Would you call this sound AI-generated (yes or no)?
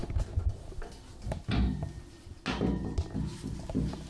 no